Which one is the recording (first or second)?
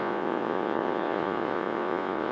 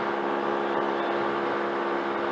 second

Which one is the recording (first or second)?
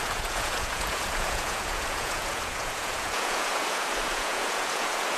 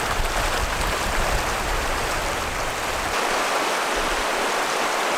second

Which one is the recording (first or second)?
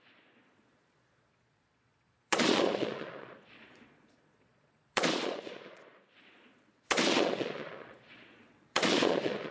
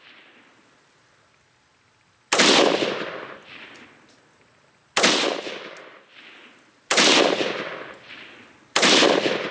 second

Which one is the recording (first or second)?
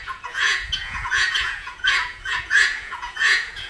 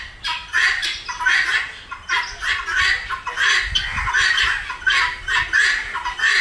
second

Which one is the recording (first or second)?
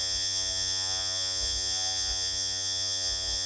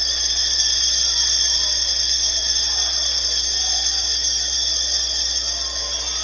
second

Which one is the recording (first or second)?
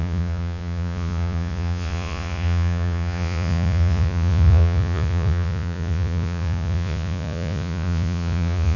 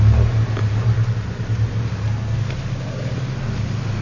second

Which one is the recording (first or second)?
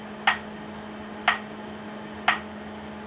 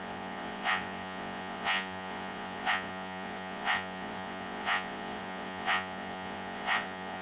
first